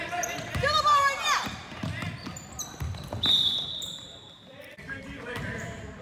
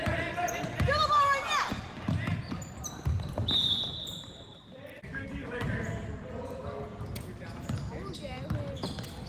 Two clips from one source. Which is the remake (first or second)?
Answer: first